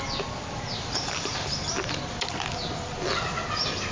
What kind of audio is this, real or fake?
real